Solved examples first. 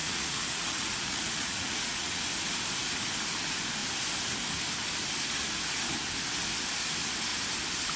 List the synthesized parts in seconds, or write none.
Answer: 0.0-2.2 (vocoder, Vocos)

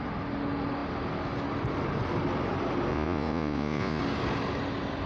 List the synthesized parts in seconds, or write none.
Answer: 2.9-4.0 (vocoder, Vocos)

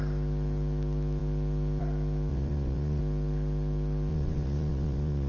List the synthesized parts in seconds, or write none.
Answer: 2.3-3.0 (vocoder, Vocos); 4.1-5.3